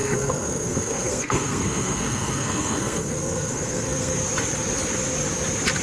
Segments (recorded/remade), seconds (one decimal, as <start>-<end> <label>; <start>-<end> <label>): 0.0-4.2 remade; 4.2-5.8 recorded